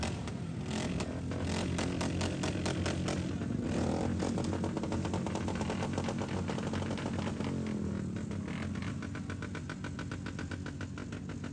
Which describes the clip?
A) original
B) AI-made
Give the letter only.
A